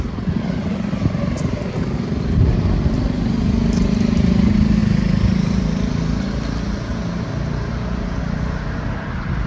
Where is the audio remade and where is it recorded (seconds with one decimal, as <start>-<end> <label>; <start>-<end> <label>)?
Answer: 0.0-9.5 recorded